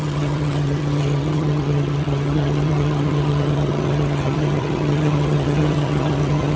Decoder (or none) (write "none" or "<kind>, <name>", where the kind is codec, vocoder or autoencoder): vocoder, HiFi-GAN